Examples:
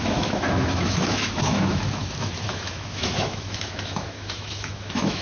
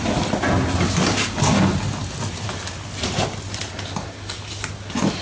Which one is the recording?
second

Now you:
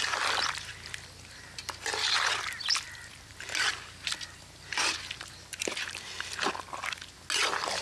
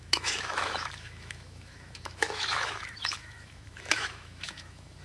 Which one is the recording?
first